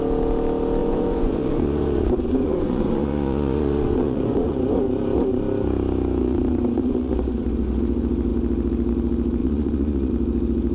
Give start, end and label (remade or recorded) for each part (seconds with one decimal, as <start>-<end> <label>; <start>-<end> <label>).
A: 0.0-0.8 recorded; 0.8-4.7 remade; 4.7-6.2 recorded; 6.2-7.1 remade; 7.1-9.4 recorded; 9.4-10.1 remade; 10.1-10.7 recorded